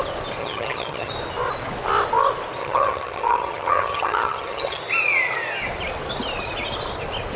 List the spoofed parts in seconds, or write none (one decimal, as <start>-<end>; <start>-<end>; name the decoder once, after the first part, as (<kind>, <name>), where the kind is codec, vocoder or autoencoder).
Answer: 0.4-1.1 (vocoder, HiFi-GAN); 2.6-4.8